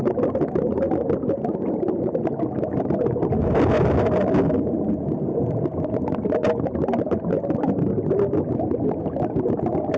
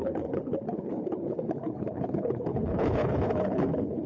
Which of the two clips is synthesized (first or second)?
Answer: second